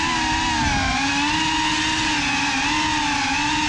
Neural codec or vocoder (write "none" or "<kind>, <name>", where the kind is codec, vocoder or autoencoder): none